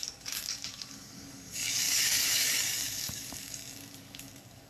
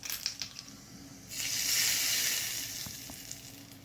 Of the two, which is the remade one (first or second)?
first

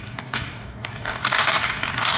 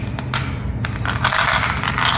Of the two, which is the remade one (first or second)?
first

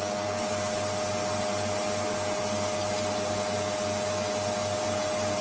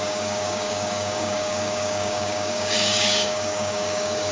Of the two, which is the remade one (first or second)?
second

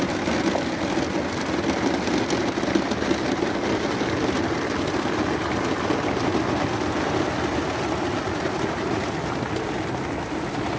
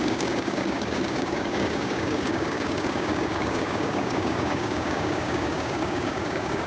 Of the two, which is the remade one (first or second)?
second